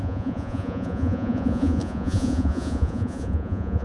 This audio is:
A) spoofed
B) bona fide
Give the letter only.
A